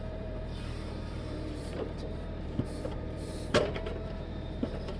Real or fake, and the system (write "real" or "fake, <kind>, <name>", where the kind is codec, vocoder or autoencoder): fake, vocoder, BigVGAN v2